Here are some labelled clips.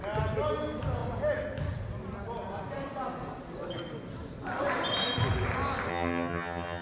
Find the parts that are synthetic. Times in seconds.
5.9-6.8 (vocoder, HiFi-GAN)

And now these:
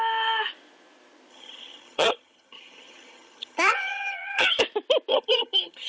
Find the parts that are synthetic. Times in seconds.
1.3-4.6 (vocoder, HiFi-GAN); 5.1-5.9

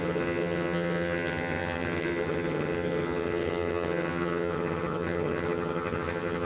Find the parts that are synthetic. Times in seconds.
0.0-6.4 (vocoder, HiFi-GAN)

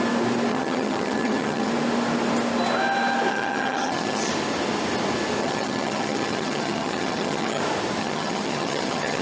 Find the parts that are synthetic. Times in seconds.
0.5-1.7 (vocoder, HiFi-GAN); 3.3-4.3; 5.4-7.6; 8.0-9.2

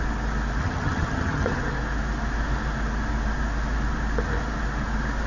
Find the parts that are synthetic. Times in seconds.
0.6-1.6 (vocoder, HiFi-GAN)

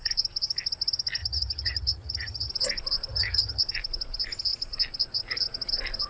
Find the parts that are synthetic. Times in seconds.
1.2-2.5 (vocoder, HiFi-GAN); 3.1-3.6